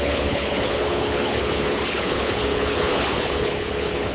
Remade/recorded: remade